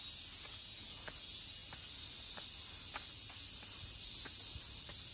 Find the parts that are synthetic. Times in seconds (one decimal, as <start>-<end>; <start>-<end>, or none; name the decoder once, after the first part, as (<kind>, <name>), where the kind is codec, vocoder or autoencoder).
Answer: none